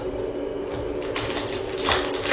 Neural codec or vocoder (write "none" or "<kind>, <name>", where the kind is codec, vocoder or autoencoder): none